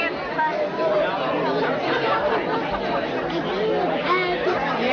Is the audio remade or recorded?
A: recorded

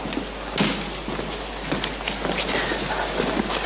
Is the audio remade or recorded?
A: recorded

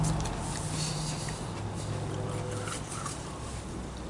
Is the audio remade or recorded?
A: recorded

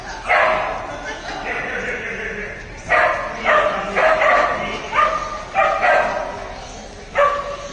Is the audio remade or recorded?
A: recorded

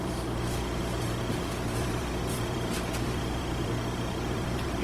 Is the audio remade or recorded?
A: remade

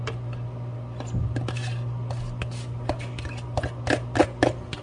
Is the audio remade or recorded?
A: recorded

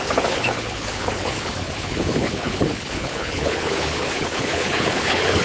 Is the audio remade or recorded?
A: remade